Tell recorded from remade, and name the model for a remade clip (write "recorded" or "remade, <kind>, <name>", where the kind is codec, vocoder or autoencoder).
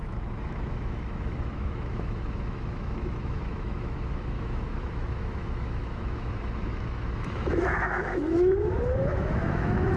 remade, autoencoder, DAC-VAE